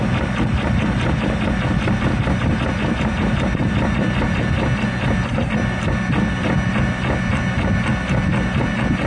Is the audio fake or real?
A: real